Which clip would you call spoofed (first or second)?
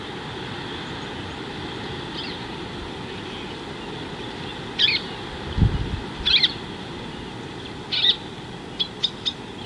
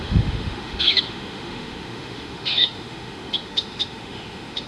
second